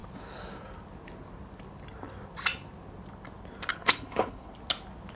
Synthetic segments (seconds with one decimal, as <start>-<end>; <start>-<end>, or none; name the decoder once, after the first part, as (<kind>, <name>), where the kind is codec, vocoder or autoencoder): 3.7-4.5 (codec, HILCodec)